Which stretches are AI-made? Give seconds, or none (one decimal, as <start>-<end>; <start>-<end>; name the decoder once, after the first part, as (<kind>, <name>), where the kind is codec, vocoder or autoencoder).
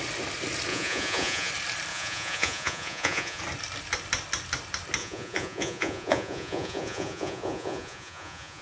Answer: 0.7-1.5 (vocoder, Vocos); 1.9-3.4; 5.0-8.6